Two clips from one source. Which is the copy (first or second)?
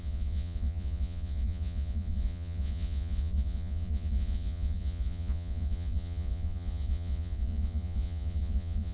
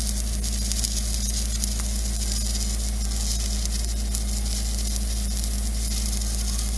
first